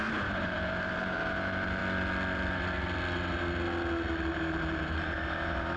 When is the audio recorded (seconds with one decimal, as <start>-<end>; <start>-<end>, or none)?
1.8-4.3